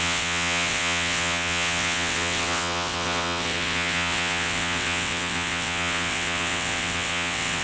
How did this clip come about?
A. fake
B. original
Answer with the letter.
A